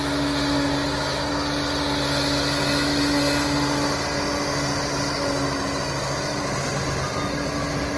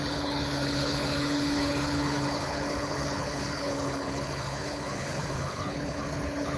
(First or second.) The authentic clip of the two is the first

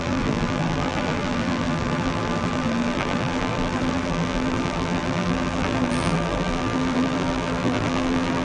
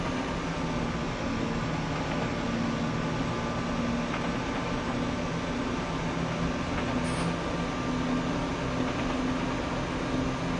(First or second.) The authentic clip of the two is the second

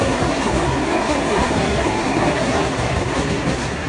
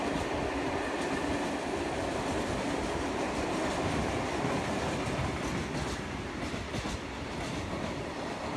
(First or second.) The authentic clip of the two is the second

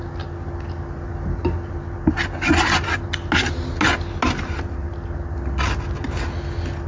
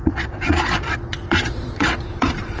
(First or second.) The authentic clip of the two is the first